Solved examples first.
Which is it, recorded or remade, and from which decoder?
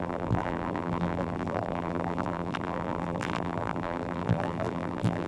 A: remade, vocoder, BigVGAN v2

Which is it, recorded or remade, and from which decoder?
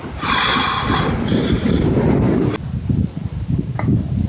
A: recorded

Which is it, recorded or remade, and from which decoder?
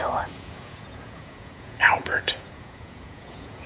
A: remade, vocoder, Vocos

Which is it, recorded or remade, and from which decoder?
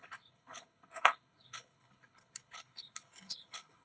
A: remade, codec, HILCodec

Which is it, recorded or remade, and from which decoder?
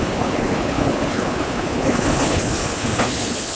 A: remade, codec, HILCodec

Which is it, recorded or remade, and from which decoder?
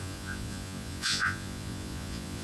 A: remade, vocoder, Vocos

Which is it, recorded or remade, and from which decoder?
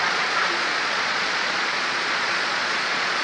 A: remade, vocoder, Vocos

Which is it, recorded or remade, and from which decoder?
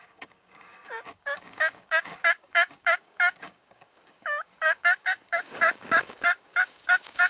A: remade, codec, DAC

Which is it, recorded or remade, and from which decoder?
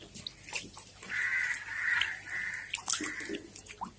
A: recorded